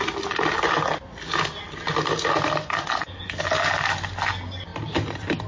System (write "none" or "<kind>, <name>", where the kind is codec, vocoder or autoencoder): none